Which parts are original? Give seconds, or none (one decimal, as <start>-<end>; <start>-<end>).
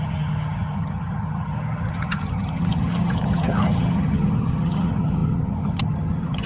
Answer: none